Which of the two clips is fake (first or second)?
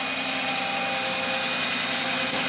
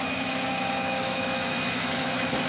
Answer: second